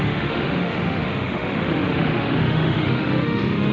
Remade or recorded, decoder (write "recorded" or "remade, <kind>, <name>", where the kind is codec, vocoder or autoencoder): remade, autoencoder, DAC-VAE